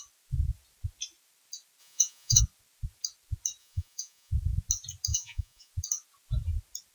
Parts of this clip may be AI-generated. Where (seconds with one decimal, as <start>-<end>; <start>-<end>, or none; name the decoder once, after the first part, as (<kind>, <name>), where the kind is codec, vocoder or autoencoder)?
1.8-2.4 (vocoder, Vocos); 3.6-4.3; 5.1-5.7